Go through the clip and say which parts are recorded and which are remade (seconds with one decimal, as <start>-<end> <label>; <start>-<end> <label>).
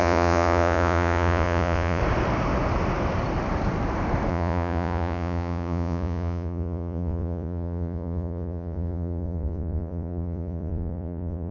0.0-2.0 remade; 2.0-4.3 recorded; 4.3-11.5 remade